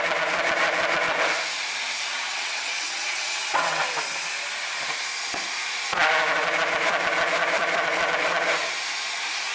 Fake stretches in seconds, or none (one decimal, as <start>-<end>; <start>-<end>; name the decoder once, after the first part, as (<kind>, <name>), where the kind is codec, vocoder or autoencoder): 2.3-3.8 (vocoder, WaveNeXt)